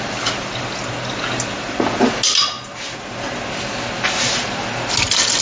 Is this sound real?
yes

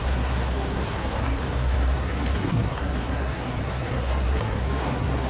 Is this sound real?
no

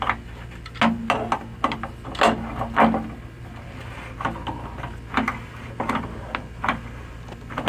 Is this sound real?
yes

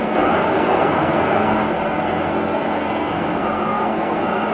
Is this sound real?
no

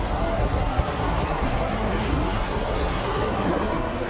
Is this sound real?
no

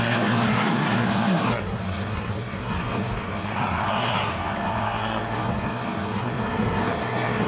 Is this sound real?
no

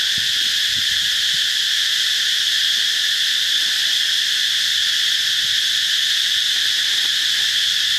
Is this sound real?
yes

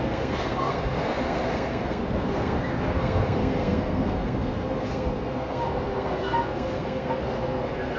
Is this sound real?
no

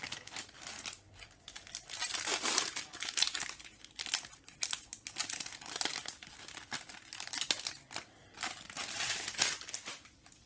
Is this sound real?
yes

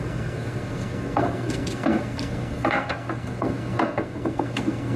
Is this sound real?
no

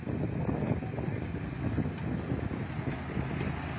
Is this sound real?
yes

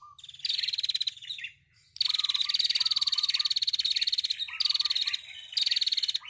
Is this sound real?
yes